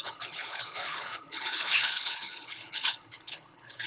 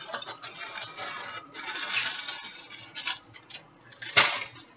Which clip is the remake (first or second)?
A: first